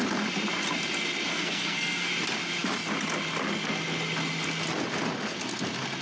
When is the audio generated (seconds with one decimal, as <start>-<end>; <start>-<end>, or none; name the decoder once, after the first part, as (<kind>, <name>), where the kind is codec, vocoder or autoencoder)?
1.3-2.1 (codec, SNAC)